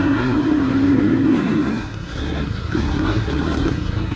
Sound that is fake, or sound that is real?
fake